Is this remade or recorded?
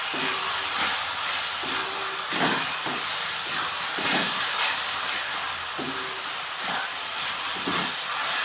remade